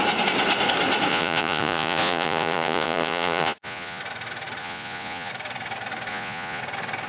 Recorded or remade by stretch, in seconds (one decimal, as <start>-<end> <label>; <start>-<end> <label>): 0.0-1.1 recorded; 1.1-4.0 remade; 4.0-4.6 recorded; 4.6-5.3 remade; 5.3-6.1 recorded; 6.1-6.6 remade; 6.6-7.1 recorded